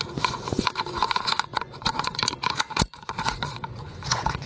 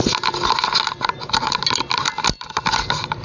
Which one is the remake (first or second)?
first